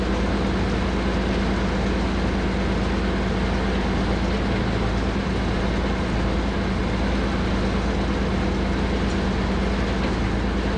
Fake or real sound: real